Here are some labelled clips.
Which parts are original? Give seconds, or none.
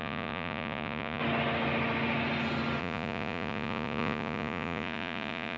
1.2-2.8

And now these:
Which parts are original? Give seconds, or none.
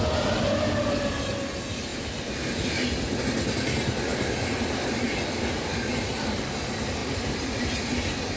0.0-1.9; 3.2-7.0; 7.6-8.4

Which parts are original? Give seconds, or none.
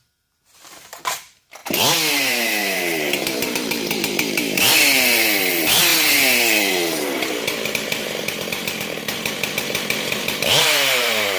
1.6-2.1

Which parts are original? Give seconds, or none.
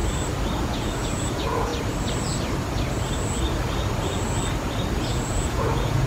0.0-0.6; 1.7-5.1